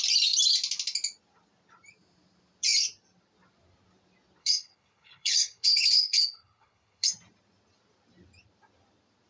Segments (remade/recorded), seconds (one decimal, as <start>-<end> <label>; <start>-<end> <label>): 0.0-4.4 recorded; 4.4-7.1 remade; 7.1-9.3 recorded